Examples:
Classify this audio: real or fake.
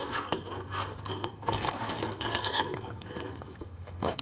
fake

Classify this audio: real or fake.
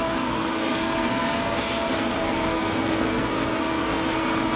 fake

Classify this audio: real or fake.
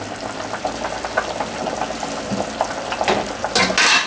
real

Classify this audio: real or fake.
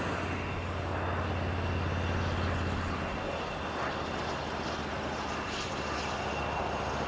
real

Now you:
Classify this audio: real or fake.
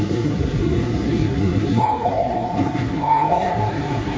fake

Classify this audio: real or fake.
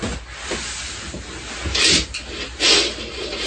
real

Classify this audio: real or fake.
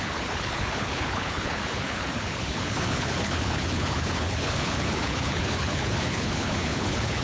fake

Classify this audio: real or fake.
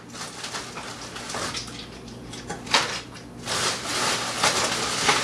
real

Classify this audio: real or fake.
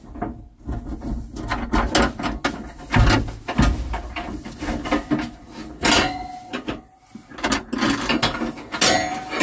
real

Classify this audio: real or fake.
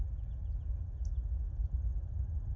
real